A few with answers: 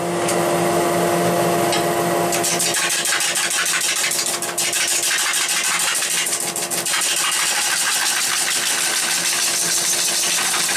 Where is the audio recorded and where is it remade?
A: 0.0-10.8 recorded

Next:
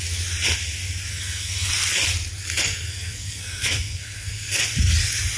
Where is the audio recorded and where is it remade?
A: 0.0-1.1 recorded; 1.1-1.7 remade; 1.7-2.6 recorded; 2.6-4.6 remade; 4.6-5.4 recorded

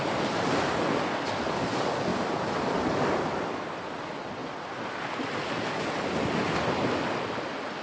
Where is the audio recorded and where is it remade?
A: 0.0-2.1 recorded; 2.1-3.3 remade; 3.3-7.8 recorded

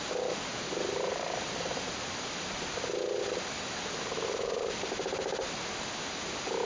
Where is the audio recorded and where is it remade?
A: 0.0-6.6 recorded